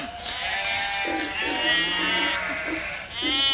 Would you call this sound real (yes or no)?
yes